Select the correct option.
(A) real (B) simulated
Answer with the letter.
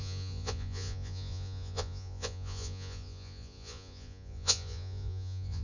B